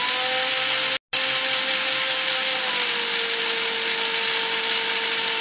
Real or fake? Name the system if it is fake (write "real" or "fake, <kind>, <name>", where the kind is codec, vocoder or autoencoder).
real